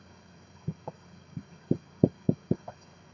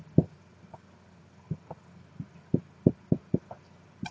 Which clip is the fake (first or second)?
first